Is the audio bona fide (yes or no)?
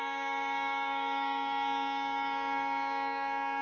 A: no